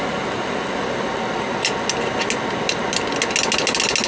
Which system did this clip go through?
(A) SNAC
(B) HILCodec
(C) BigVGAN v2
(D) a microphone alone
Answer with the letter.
D